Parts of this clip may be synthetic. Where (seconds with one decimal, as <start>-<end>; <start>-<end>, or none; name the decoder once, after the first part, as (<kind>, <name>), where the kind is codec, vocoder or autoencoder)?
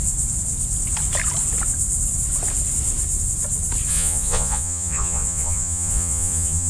3.9-6.7 (vocoder, Vocos)